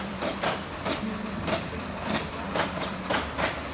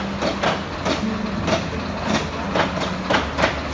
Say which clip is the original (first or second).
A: second